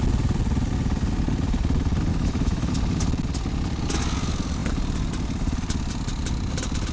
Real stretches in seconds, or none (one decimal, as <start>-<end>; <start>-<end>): 0.0-2.1; 2.7-6.9